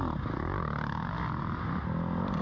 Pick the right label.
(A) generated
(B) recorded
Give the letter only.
B